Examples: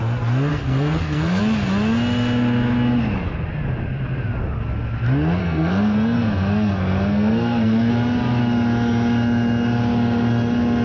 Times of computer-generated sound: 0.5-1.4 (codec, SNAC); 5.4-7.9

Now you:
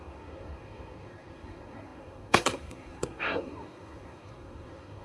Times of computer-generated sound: 0.0-5.0 (codec, SNAC)

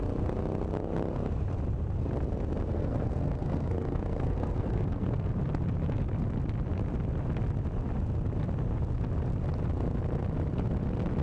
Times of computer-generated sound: 2.7-5.3 (codec, SNAC)